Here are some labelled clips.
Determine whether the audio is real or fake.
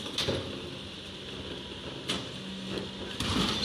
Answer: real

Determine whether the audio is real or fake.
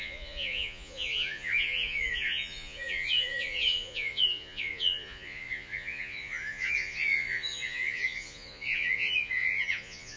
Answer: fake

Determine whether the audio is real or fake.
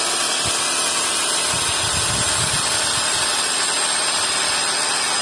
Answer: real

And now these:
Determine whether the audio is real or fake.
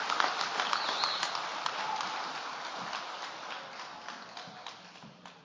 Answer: real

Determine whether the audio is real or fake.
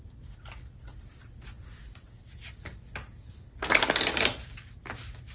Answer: real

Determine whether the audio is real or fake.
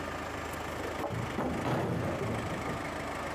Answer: real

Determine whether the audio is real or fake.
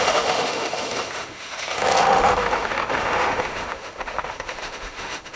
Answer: fake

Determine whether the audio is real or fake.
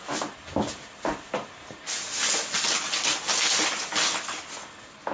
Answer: real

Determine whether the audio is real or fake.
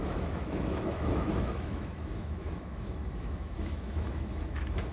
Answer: fake